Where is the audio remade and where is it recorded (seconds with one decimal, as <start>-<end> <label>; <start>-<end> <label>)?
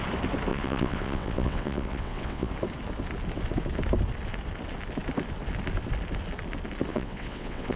0.0-0.5 recorded; 0.5-2.5 remade; 2.5-6.9 recorded; 6.9-7.8 remade